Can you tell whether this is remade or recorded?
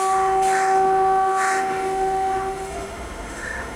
remade